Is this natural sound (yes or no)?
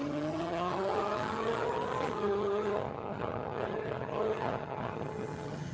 no